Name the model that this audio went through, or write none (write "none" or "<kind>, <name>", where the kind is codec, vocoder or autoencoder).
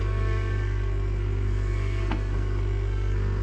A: codec, SNAC